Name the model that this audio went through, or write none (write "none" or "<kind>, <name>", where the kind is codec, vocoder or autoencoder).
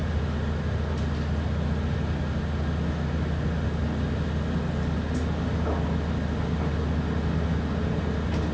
none